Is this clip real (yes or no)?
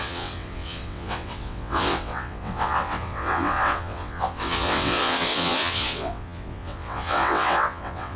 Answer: no